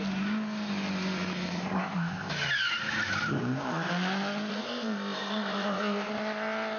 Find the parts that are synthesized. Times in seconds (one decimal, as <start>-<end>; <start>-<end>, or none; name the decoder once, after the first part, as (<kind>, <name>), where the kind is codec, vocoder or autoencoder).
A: 1.6-2.3 (codec, ZipCodec); 3.3-3.9; 4.5-6.1